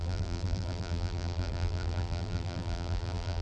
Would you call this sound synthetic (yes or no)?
yes